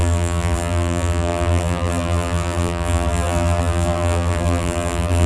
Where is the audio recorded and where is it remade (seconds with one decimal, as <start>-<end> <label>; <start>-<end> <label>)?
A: 0.0-5.3 remade